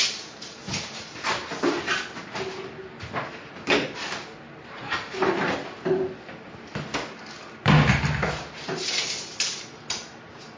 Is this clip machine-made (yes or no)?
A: no